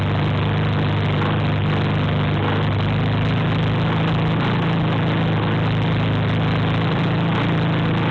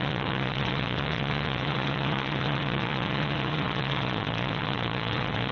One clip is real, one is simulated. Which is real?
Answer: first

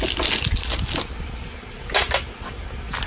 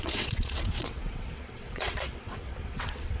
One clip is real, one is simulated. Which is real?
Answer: first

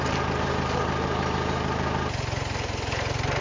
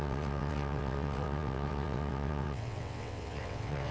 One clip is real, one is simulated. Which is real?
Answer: first